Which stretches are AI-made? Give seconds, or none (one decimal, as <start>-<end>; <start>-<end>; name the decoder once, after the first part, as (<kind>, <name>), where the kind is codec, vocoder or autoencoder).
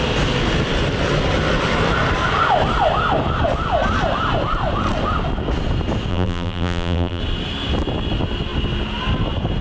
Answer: 6.1-7.2 (vocoder, BigVGAN v2)